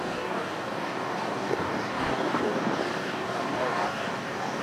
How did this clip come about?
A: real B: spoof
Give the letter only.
B